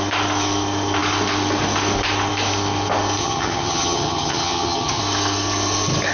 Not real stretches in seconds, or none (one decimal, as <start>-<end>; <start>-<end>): 3.2-5.0